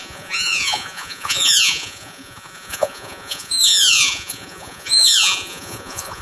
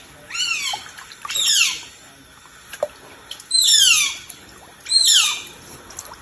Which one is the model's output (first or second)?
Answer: first